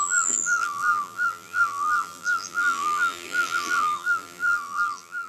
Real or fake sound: fake